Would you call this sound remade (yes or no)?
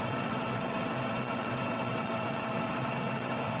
yes